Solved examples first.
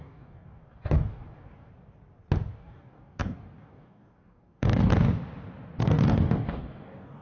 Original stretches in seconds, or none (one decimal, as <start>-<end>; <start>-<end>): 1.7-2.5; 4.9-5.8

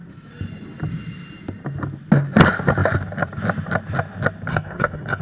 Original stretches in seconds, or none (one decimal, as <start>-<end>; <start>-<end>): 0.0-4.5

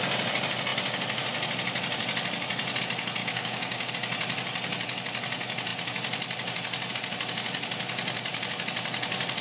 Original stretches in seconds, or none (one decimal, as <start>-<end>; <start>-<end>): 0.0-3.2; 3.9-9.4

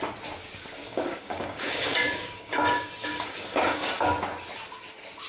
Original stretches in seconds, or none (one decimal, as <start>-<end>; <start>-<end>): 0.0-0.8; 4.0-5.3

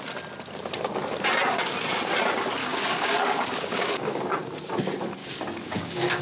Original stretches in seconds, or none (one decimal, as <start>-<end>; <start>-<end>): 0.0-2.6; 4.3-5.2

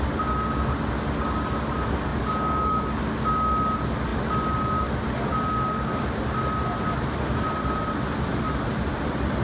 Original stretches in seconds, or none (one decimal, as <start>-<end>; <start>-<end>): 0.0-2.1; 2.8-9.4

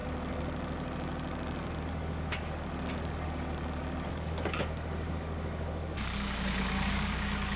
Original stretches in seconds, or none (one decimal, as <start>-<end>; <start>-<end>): 0.0-4.1

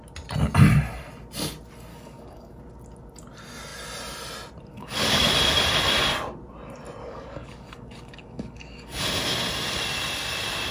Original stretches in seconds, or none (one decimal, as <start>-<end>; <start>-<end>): 0.0-1.9; 2.6-4.7; 5.3-7.0; 9.0-10.7